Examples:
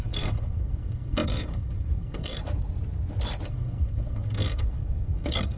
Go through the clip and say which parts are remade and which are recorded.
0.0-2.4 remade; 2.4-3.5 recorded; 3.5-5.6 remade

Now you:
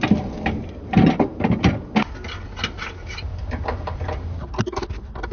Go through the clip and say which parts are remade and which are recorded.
0.0-5.3 recorded

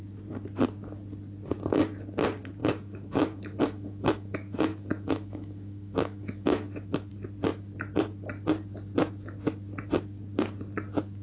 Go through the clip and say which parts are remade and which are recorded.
0.0-2.6 recorded; 2.6-7.1 remade; 7.1-11.2 recorded

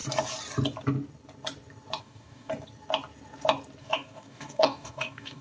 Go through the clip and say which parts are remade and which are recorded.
0.0-2.0 recorded; 2.0-2.5 remade; 2.5-3.8 recorded; 3.8-5.4 remade

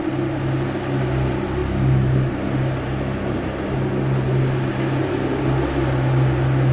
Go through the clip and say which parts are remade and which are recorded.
0.0-6.7 recorded

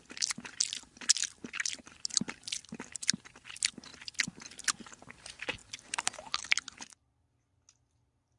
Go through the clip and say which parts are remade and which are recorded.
0.0-8.4 recorded

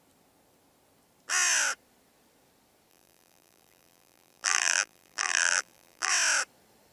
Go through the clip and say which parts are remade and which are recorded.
0.0-2.9 recorded; 2.9-6.1 remade; 6.1-6.9 recorded

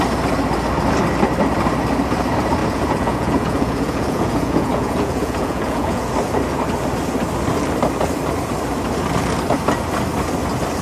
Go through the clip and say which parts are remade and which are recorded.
0.0-2.6 recorded; 2.6-6.1 remade; 6.1-10.8 recorded